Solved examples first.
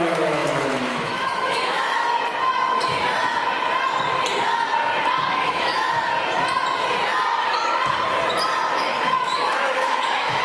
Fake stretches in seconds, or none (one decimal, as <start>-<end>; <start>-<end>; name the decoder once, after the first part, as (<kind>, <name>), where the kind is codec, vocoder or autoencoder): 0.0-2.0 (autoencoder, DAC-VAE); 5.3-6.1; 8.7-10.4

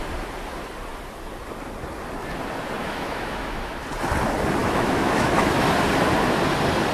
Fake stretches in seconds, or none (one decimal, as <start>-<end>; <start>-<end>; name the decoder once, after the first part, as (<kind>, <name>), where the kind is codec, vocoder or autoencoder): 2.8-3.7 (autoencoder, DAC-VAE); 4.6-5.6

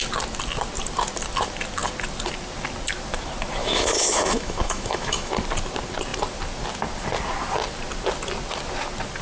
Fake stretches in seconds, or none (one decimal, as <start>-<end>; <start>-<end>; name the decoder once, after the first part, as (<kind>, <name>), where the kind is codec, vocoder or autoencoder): 3.6-5.3 (autoencoder, DAC-VAE)

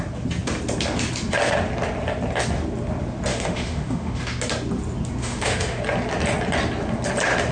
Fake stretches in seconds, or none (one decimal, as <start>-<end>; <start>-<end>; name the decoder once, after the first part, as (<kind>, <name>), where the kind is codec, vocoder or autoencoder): 3.3-4.2 (autoencoder, DAC-VAE); 5.2-5.8